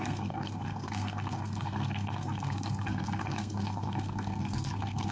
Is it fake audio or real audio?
fake